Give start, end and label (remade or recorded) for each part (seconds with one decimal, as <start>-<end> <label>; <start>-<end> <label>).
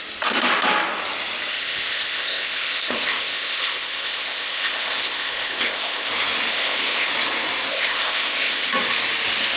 0.0-1.5 recorded; 1.5-6.1 remade; 6.1-6.5 recorded; 6.5-7.1 remade; 7.1-7.7 recorded; 7.7-8.7 remade; 8.7-9.6 recorded